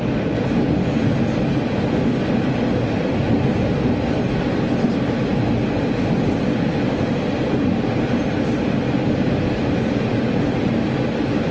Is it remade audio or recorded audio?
recorded